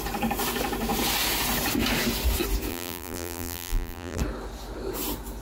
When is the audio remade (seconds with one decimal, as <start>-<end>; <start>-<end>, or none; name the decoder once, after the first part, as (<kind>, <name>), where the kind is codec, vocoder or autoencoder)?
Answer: 2.7-4.2 (vocoder, BigVGAN v2)